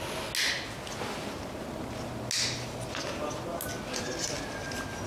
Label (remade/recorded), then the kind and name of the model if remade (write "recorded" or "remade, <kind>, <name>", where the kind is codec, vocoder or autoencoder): recorded